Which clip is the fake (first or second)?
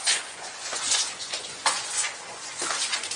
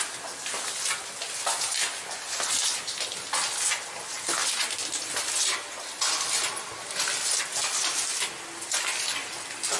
first